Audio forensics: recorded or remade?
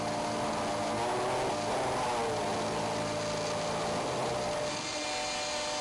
recorded